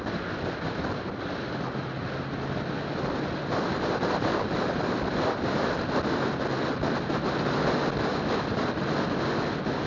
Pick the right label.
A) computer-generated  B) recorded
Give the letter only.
B